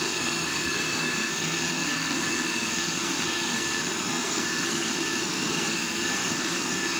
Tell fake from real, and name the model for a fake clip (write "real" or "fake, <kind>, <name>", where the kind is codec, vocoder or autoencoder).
fake, codec, SNAC